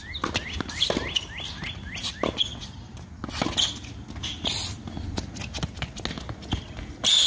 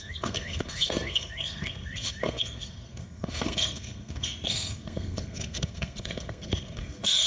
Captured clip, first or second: first